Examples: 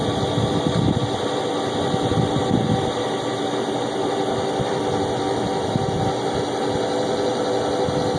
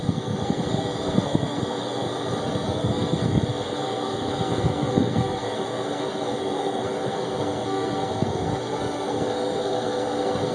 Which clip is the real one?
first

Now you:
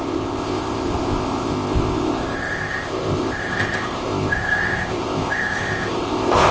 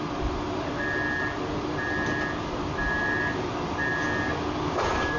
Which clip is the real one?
second